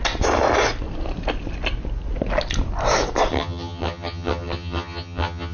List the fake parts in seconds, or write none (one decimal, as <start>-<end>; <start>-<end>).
3.3-5.5